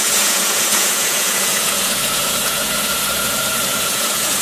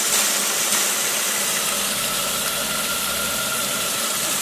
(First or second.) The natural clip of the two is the second